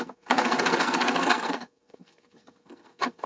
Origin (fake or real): fake